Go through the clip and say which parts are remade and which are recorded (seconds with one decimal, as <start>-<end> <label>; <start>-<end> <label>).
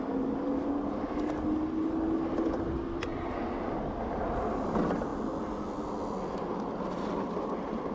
0.0-7.9 recorded